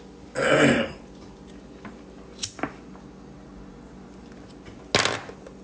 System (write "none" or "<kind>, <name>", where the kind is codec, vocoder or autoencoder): none